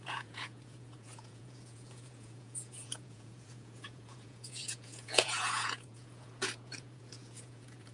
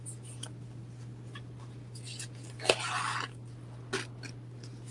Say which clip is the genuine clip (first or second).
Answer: second